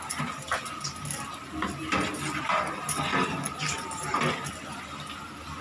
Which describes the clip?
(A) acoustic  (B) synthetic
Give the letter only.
A